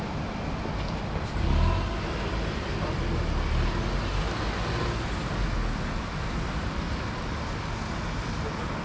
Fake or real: real